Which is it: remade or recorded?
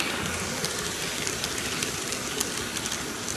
recorded